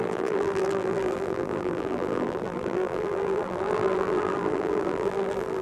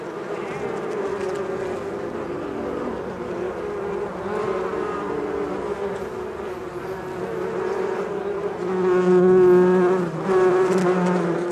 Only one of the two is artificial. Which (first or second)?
first